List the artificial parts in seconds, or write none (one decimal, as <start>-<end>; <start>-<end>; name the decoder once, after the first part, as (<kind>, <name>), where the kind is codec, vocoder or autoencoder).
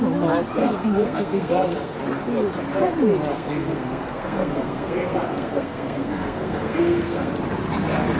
0.6-2.0 (codec, SNAC); 3.3-7.3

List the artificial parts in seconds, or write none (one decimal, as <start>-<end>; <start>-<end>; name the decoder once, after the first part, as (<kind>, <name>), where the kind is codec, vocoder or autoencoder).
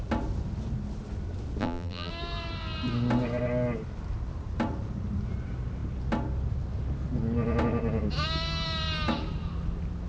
1.6-2.1 (vocoder, BigVGAN v2)